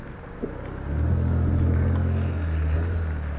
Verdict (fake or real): real